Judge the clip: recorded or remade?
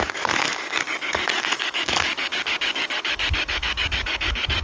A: remade